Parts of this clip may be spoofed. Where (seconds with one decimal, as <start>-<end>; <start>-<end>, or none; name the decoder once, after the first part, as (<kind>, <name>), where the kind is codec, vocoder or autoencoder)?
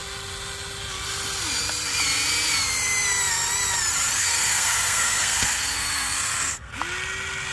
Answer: 4.2-6.7 (codec, SNAC)